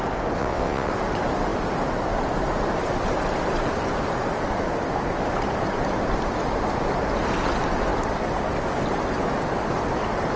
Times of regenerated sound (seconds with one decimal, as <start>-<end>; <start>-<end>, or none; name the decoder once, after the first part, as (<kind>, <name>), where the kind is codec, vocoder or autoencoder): 0.4-0.9 (vocoder, WaveNeXt)